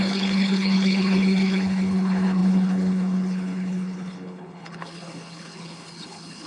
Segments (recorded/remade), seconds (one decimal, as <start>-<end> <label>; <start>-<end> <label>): 0.0-6.5 remade